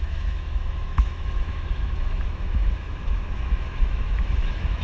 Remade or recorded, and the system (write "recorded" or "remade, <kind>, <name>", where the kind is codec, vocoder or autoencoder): remade, autoencoder, DAC-VAE